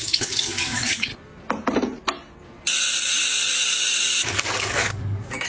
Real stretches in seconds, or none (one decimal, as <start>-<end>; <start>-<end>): 1.1-4.2